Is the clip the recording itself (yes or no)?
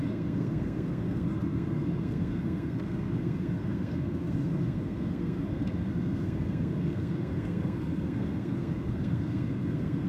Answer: no